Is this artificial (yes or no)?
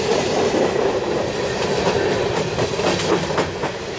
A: no